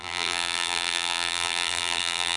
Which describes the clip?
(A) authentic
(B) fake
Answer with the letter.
B